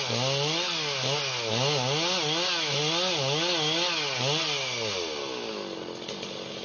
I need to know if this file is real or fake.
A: real